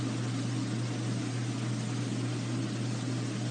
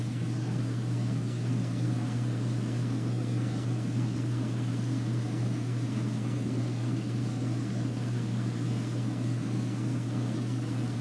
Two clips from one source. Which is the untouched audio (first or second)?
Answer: first